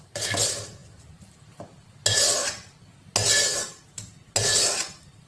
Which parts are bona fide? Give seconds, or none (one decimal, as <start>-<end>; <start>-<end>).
0.0-5.3